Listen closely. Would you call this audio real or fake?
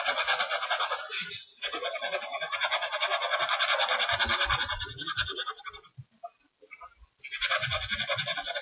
real